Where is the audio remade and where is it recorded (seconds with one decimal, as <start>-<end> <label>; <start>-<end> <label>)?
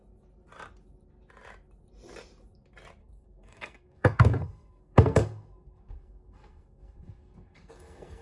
0.0-3.0 recorded; 3.0-8.2 remade